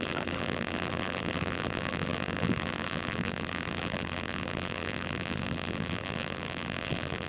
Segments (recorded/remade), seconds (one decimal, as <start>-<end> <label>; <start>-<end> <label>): 0.0-7.3 remade